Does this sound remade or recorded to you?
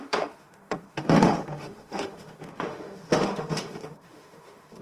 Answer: remade